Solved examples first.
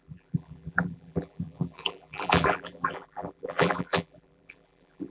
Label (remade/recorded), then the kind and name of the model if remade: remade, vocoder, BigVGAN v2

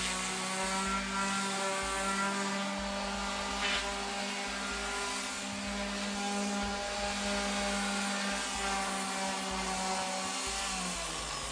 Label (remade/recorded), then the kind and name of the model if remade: recorded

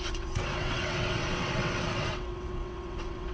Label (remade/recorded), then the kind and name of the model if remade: remade, vocoder, WaveNeXt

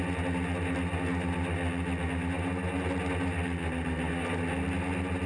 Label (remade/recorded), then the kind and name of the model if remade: recorded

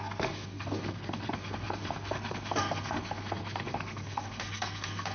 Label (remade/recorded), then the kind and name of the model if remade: remade, codec, SNAC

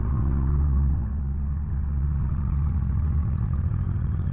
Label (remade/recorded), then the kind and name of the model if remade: remade, vocoder, WaveNeXt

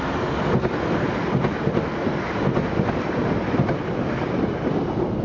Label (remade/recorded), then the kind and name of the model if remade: recorded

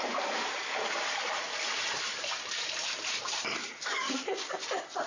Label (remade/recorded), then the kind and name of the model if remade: remade, vocoder, BigVGAN v2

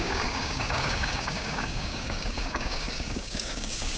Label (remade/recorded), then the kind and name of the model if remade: remade, codec, DAC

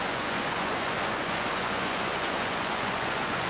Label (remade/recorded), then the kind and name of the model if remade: remade, vocoder, Vocos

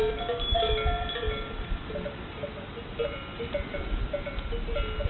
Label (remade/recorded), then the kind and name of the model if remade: recorded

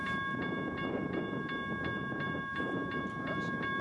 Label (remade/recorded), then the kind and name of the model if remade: remade, vocoder, BigVGAN v2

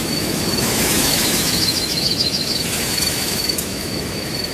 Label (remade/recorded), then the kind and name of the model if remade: remade, autoencoder, DAC-VAE